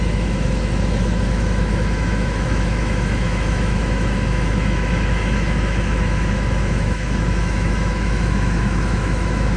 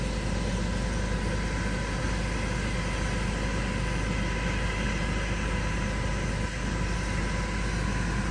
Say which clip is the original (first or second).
second